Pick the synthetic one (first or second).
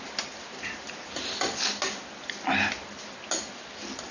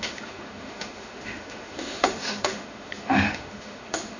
second